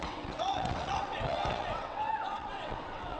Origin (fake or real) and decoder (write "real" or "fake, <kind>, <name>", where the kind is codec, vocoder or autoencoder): fake, vocoder, WaveNeXt